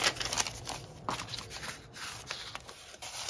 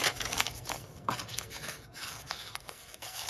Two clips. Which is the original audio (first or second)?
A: first